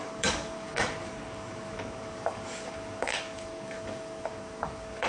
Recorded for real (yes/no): no